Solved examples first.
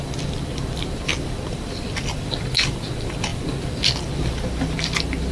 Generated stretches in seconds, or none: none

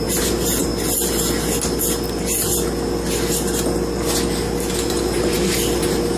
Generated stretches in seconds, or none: 0.0-0.7 (vocoder, BigVGAN v2); 4.4-6.2

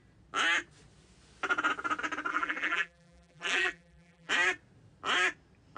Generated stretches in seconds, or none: 2.3-4.3 (vocoder, BigVGAN v2)

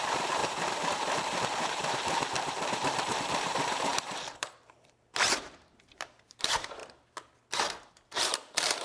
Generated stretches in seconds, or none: 0.0-6.8 (vocoder, BigVGAN v2); 7.9-8.8